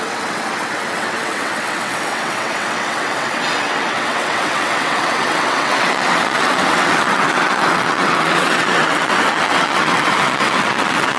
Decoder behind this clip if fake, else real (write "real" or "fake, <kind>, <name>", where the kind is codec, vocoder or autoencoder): fake, vocoder, WaveNeXt